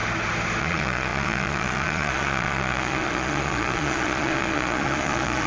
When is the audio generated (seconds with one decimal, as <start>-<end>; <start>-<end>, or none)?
0.6-5.5